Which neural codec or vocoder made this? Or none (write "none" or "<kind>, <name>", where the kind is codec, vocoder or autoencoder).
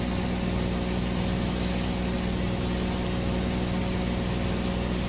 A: none